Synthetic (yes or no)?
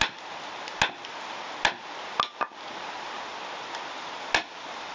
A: no